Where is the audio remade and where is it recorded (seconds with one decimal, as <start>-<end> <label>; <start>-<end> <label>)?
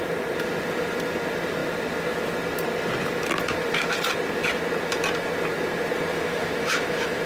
0.0-6.1 recorded; 6.1-7.3 remade